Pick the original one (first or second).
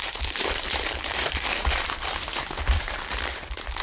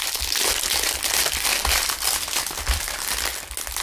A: second